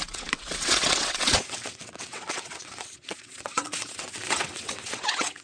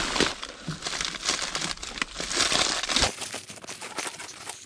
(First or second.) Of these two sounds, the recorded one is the second